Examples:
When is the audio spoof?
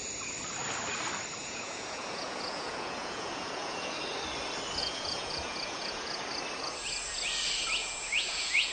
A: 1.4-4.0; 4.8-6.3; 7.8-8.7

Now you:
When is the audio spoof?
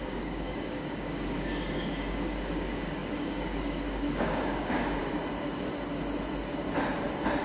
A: 0.0-5.0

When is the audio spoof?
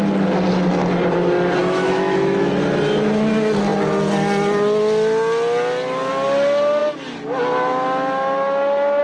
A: 1.6-2.5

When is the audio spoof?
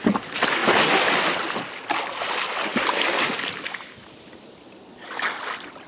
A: none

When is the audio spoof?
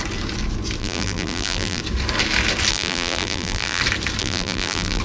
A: 0.8-1.8; 2.7-3.8; 4.2-5.0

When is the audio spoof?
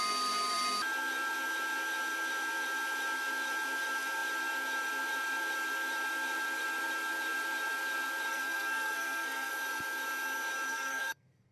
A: 8.3-9.5; 10.7-11.5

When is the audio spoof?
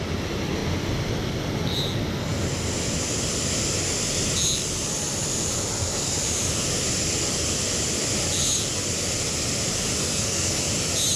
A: 10.0-10.6